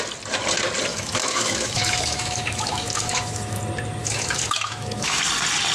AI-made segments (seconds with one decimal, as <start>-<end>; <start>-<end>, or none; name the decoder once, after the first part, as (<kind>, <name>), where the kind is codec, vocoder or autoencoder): 0.9-3.6 (autoencoder, DAC-VAE); 4.0-5.2